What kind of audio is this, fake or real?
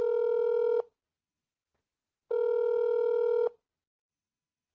real